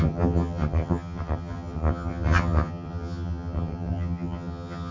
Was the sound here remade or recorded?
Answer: remade